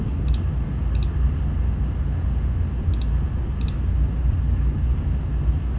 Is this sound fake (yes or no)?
no